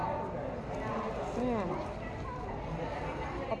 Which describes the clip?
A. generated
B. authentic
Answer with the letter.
B